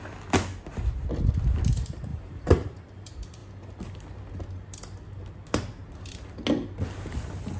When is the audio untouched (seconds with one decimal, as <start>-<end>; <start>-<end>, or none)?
0.0-2.1; 2.8-7.6